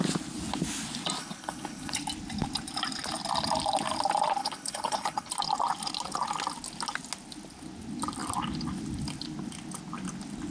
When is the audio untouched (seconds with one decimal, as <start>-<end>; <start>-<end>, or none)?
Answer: 0.0-1.2; 2.0-4.4; 5.3-10.5